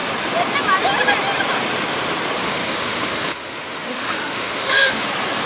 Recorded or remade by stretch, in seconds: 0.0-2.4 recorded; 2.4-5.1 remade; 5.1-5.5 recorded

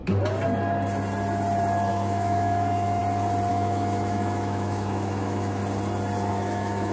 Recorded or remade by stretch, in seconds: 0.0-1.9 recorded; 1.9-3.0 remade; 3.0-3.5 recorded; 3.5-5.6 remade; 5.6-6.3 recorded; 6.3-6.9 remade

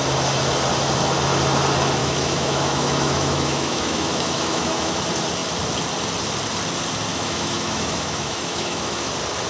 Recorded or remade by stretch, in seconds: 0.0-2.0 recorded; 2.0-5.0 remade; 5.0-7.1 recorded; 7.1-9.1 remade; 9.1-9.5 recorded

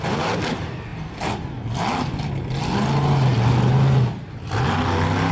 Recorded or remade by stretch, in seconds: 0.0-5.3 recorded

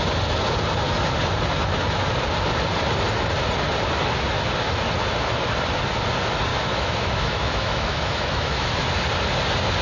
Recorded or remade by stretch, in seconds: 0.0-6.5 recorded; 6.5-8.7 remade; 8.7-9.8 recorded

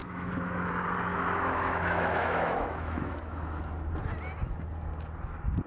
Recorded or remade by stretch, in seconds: 0.0-0.7 remade; 0.7-1.1 recorded; 1.1-3.6 remade; 3.6-5.7 recorded